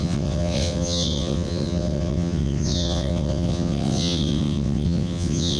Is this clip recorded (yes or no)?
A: no